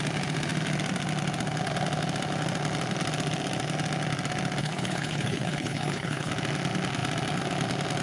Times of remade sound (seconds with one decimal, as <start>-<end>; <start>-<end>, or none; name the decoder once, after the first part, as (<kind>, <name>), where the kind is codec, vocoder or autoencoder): 4.6-6.3 (codec, HILCodec)